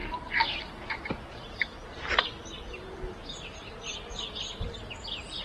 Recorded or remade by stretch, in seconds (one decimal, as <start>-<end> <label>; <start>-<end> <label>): 0.0-5.4 recorded